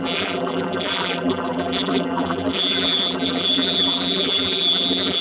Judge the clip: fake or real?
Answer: fake